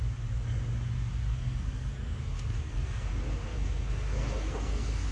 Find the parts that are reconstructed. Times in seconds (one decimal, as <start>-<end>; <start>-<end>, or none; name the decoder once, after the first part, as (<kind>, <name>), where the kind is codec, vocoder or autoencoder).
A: 1.3-3.1 (codec, SNAC); 3.5-5.1